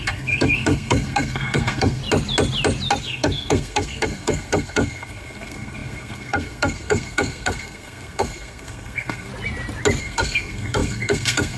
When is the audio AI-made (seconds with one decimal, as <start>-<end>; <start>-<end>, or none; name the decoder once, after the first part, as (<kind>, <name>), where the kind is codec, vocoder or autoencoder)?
0.0-2.0 (codec, SNAC); 3.0-9.3; 10.0-11.6